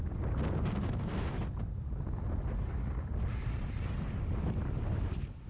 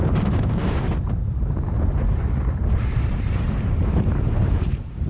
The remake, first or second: second